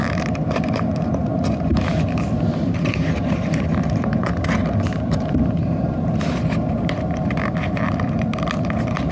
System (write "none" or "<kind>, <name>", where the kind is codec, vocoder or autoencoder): vocoder, BigVGAN v2